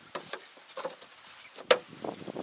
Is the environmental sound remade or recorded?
recorded